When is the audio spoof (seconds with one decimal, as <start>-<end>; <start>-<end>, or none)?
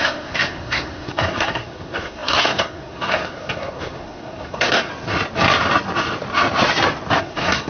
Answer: 0.0-4.9; 7.2-7.7